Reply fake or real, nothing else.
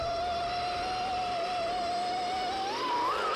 real